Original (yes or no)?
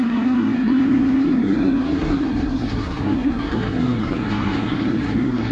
no